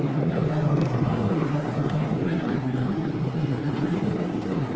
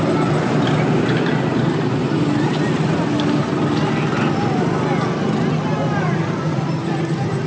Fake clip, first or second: first